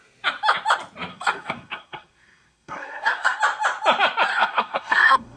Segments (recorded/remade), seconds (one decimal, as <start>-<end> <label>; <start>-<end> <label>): 0.0-1.1 recorded; 1.1-3.4 remade; 3.4-4.3 recorded; 4.3-5.4 remade